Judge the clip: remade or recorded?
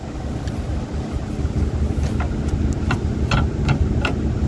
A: recorded